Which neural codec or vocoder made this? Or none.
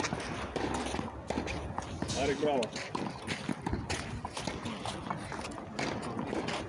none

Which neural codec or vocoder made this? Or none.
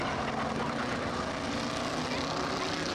none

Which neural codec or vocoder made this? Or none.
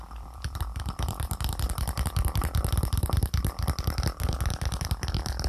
vocoder, BigVGAN v2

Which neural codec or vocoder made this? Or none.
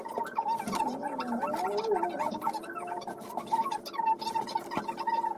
none